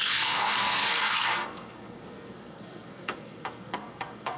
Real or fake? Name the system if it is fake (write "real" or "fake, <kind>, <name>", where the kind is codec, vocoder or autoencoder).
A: fake, codec, SNAC